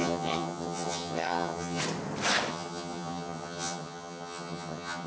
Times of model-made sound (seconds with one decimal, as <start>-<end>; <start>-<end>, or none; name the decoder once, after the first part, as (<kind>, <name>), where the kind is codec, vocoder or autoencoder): 0.0-1.8 (vocoder, HiFi-GAN); 2.5-5.1